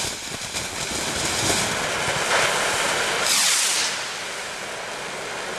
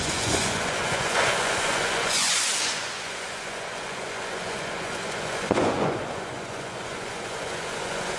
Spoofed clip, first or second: second